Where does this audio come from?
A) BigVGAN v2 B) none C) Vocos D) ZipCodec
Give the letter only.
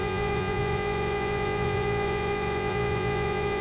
C